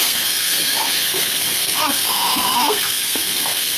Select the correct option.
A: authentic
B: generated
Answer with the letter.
B